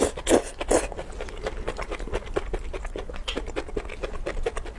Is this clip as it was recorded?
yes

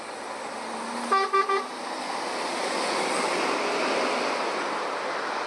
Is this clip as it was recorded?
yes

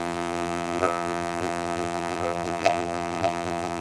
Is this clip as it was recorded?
no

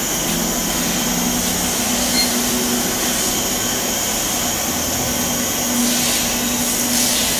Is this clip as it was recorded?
yes